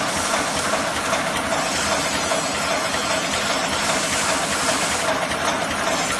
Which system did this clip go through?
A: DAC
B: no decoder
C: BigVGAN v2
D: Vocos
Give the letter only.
B